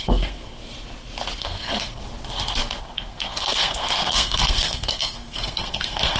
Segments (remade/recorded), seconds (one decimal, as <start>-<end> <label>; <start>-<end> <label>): 0.0-0.6 remade; 0.6-1.4 recorded; 1.4-2.0 remade; 2.0-2.8 recorded; 2.8-6.2 remade